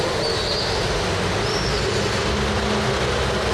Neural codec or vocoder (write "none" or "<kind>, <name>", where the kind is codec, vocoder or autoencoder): none